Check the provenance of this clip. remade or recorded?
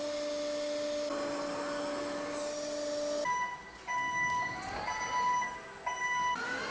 recorded